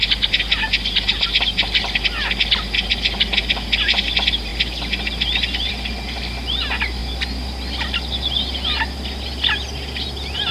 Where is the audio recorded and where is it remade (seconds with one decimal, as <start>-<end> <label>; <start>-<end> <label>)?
0.0-10.5 recorded